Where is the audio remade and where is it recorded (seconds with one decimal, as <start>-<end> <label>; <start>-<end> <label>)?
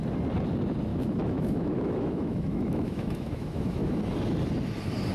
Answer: 0.0-0.9 recorded; 0.9-4.0 remade; 4.0-5.1 recorded